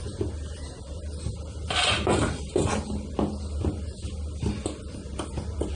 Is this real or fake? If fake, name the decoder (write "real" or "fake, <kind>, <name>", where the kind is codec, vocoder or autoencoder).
real